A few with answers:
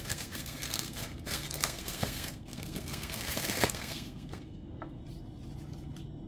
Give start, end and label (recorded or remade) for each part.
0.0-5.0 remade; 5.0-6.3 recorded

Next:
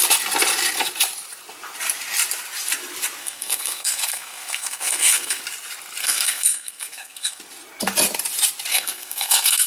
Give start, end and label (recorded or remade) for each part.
0.0-3.2 recorded; 3.2-5.4 remade; 5.4-6.0 recorded; 6.0-7.4 remade; 7.4-8.7 recorded; 8.7-9.7 remade

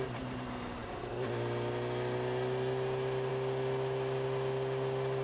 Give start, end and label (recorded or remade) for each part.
0.0-5.2 recorded

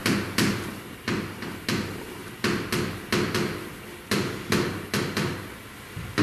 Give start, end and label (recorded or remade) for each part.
0.0-6.2 recorded

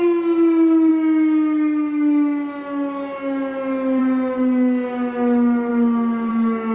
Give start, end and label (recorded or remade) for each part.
0.0-6.7 recorded

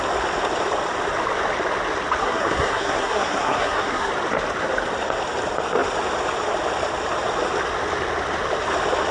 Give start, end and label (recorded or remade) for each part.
0.0-2.2 recorded; 2.2-4.1 remade; 4.1-9.1 recorded

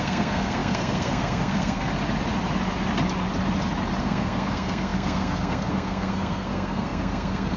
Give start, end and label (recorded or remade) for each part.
0.0-1.9 remade; 1.9-4.0 recorded; 4.0-7.6 remade

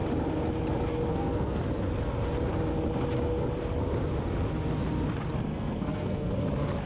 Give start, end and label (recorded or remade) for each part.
0.0-1.1 recorded; 1.1-1.6 remade; 1.6-5.5 recorded; 5.5-6.3 remade; 6.3-6.9 recorded